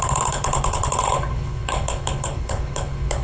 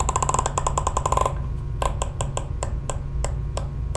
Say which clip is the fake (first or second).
first